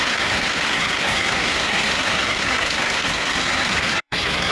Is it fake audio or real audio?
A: fake